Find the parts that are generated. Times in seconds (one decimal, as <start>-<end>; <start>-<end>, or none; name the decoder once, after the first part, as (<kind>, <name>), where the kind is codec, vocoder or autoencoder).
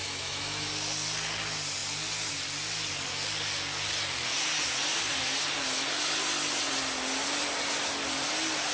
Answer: 0.0-0.7 (autoencoder, DAC-VAE)